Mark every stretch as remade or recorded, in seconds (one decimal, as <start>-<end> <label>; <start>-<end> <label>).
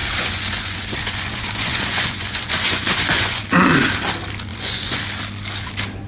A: 0.0-3.4 remade; 3.4-4.5 recorded; 4.5-5.0 remade; 5.0-6.1 recorded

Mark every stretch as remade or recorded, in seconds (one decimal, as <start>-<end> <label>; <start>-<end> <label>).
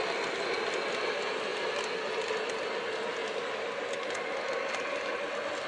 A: 0.0-5.7 recorded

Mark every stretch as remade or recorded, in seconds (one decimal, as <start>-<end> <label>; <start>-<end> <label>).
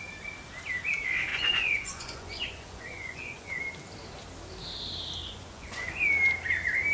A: 0.0-1.3 recorded; 1.3-3.6 remade; 3.6-5.2 recorded; 5.2-5.9 remade; 5.9-6.9 recorded